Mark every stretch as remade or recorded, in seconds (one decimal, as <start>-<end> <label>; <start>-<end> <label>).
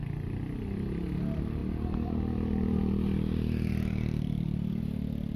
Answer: 0.0-1.6 recorded; 1.6-4.8 remade; 4.8-5.4 recorded